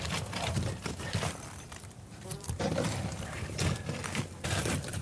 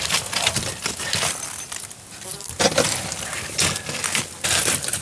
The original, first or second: second